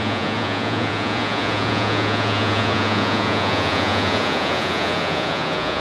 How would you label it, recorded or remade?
remade